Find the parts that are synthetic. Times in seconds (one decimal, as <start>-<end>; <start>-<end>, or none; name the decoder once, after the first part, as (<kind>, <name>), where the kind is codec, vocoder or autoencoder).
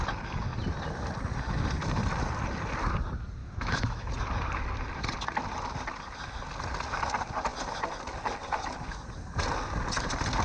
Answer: 3.4-4.1 (autoencoder, DAC-VAE)